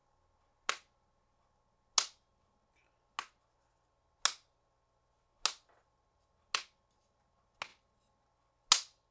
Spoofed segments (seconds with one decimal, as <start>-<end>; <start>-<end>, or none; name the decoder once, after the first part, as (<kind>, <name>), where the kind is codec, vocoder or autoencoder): none